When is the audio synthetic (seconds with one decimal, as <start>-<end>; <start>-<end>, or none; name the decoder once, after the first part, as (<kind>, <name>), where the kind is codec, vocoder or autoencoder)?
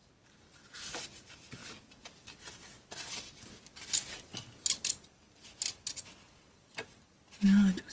1.6-2.1 (vocoder, Vocos)